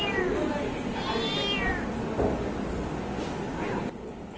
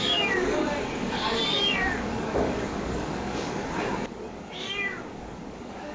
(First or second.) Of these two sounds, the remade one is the second